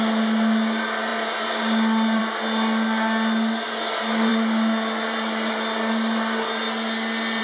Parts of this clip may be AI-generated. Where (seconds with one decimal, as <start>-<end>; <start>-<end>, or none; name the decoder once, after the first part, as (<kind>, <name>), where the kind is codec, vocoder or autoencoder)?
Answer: none